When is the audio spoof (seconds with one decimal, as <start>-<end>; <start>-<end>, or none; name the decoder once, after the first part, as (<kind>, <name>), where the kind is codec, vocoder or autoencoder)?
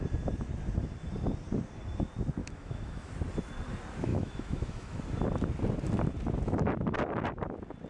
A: 2.4-3.1 (autoencoder, DAC-VAE); 4.1-5.0